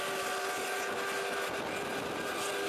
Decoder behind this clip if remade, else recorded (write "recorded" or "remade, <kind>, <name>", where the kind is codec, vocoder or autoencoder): recorded